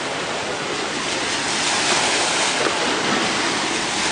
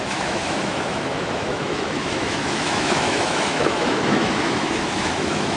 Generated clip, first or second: second